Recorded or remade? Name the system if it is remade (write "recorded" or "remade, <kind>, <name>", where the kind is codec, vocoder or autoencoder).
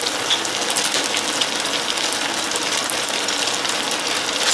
recorded